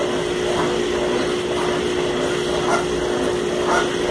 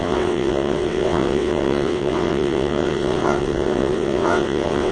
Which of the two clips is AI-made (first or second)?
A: second